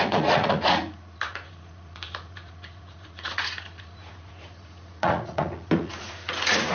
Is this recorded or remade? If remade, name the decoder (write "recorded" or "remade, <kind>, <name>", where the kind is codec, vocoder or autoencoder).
remade, vocoder, Vocos